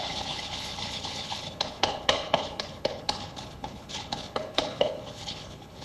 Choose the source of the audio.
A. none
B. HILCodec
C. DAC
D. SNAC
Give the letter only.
B